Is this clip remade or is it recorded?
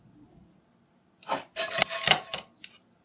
recorded